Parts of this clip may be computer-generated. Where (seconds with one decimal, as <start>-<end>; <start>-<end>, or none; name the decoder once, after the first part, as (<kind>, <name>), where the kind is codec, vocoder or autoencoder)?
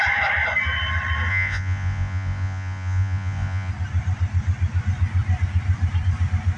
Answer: 1.3-3.7 (vocoder, Vocos)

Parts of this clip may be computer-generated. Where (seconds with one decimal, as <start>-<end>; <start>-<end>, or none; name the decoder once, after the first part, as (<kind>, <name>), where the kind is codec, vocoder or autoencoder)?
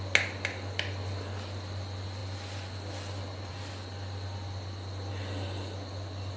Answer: none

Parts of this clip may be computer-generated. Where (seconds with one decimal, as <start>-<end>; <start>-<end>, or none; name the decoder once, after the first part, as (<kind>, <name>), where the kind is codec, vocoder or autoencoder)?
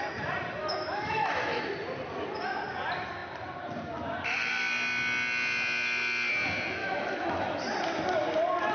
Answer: 0.6-1.7 (autoencoder, DAC-VAE); 6.8-7.6